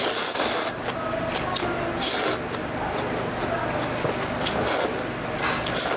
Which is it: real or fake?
real